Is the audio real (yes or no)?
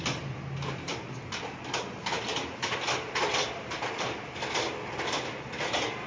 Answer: yes